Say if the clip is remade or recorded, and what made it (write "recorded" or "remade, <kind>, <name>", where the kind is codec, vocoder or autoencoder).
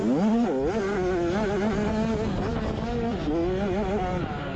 recorded